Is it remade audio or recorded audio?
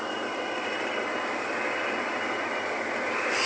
recorded